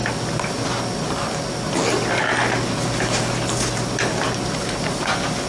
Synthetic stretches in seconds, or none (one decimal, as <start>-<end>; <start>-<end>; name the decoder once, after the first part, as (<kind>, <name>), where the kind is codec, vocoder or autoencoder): none